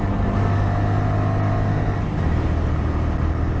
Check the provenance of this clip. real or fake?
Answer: real